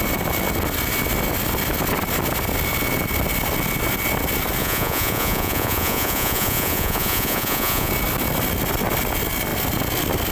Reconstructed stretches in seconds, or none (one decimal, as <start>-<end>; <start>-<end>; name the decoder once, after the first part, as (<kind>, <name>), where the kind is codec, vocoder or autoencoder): 4.6-7.9 (vocoder, Vocos)